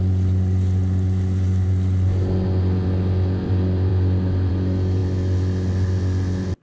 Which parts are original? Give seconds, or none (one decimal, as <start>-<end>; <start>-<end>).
0.0-6.6